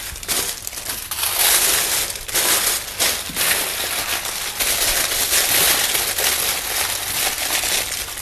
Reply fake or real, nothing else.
real